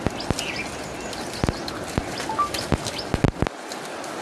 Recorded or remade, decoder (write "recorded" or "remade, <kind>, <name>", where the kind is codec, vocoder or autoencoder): recorded